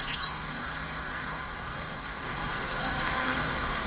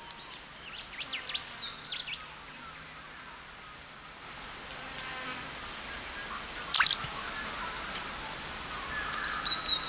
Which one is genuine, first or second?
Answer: second